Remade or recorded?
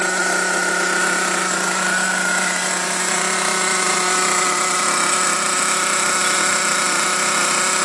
recorded